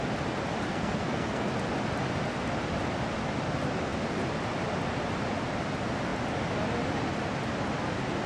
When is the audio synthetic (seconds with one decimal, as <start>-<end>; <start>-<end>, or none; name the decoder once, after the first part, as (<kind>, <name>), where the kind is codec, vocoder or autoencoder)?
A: 0.7-1.5 (codec, SNAC)

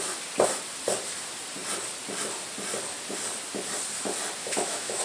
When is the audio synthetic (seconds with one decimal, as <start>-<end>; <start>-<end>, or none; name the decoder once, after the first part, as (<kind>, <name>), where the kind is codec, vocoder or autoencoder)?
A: 4.4-5.0 (autoencoder, DAC-VAE)

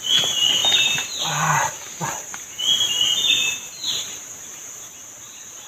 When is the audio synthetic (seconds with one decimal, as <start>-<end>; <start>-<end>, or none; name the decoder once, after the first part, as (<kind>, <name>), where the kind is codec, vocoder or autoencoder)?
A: 0.6-1.2 (vocoder, BigVGAN v2); 3.7-5.7

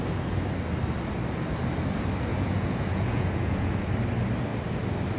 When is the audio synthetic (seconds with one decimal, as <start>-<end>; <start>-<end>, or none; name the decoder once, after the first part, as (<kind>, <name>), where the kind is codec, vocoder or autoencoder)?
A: 2.3-3.8 (vocoder, Vocos)